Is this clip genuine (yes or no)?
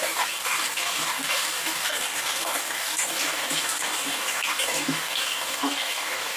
no